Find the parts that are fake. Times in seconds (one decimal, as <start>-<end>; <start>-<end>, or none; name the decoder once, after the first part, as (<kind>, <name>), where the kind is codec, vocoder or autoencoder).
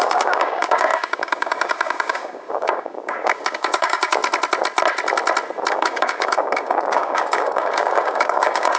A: 0.0-4.2 (codec, DAC); 5.7-8.8